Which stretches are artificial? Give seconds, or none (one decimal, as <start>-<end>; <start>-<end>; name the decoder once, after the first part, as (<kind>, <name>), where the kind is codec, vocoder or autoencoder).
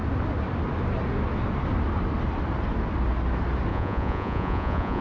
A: 3.7-5.0 (vocoder, Vocos)